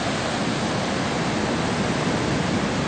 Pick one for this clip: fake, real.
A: real